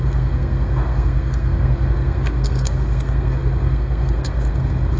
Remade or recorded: remade